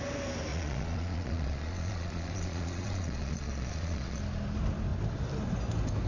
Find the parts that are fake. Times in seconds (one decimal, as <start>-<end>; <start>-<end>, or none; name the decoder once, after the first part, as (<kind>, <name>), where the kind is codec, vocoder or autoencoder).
0.5-4.2 (vocoder, Vocos)